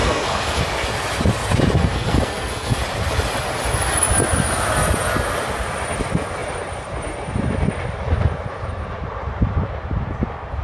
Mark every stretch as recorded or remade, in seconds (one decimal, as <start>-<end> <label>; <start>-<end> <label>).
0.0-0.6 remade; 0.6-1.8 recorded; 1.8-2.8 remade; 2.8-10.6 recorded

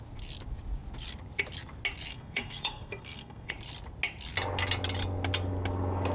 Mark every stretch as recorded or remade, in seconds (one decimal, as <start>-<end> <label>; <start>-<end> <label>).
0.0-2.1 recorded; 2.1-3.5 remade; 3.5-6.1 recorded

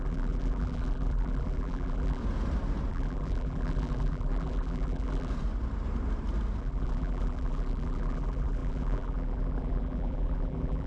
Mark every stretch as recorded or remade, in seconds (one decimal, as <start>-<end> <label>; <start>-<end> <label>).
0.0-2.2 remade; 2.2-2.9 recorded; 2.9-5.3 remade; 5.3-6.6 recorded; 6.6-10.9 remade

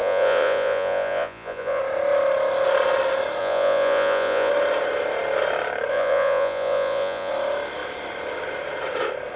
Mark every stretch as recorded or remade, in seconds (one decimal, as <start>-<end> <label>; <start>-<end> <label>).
0.0-1.8 remade; 1.8-3.4 recorded; 3.4-4.5 remade; 4.5-5.9 recorded; 5.9-7.3 remade; 7.3-9.4 recorded